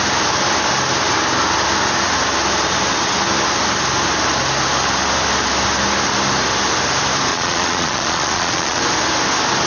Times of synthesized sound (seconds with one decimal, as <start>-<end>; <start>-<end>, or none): 7.3-8.8